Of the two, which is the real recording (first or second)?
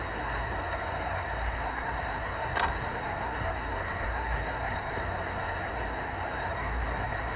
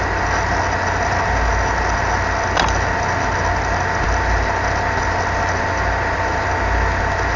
second